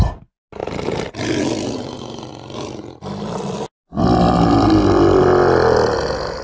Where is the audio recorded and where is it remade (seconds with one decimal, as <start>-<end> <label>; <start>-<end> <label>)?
0.0-6.4 recorded

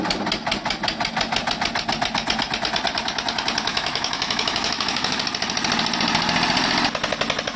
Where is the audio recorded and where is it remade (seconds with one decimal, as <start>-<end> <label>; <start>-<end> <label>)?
0.0-3.7 recorded; 3.7-5.2 remade; 5.2-7.6 recorded

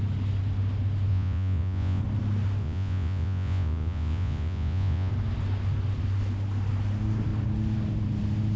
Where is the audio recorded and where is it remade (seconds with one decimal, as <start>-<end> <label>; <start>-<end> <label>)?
0.0-1.1 recorded; 1.1-2.0 remade; 2.0-2.6 recorded; 2.6-5.1 remade; 5.1-8.6 recorded

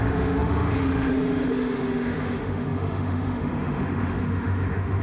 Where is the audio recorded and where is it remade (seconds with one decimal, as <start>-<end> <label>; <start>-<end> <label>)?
0.0-5.0 remade

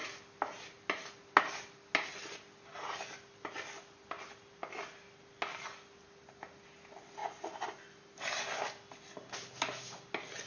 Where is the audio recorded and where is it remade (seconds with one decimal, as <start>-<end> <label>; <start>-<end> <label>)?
0.0-10.5 recorded

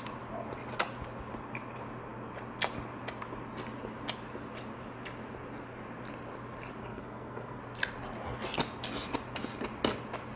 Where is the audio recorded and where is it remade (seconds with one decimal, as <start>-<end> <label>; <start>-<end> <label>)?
0.0-6.8 recorded; 6.8-7.6 remade; 7.6-10.4 recorded

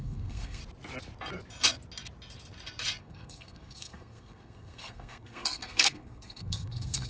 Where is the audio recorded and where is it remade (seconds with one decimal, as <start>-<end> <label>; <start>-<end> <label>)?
0.0-0.6 remade; 0.6-3.0 recorded; 3.0-7.1 remade

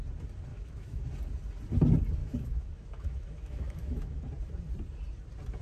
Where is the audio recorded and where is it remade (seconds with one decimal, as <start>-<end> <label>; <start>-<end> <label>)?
0.0-0.5 recorded; 0.5-1.1 remade; 1.1-2.2 recorded; 2.2-4.2 remade; 4.2-5.6 recorded